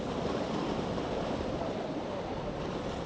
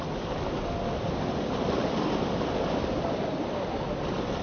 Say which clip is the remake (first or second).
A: first